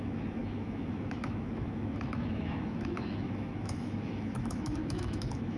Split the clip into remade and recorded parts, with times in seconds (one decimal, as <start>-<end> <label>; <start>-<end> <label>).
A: 0.0-5.6 remade